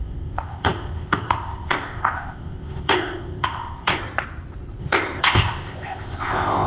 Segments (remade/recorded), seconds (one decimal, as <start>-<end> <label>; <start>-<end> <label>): 0.0-4.0 remade; 4.0-4.8 recorded; 4.8-6.7 remade